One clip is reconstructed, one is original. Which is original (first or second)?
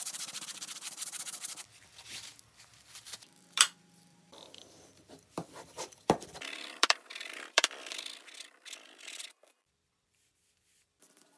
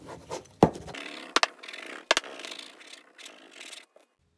second